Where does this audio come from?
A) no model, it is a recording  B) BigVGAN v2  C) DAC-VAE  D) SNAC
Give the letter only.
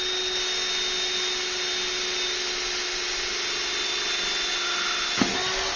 A